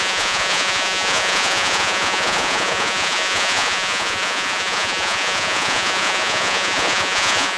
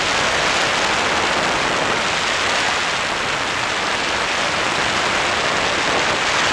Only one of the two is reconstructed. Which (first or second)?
first